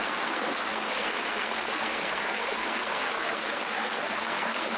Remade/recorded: remade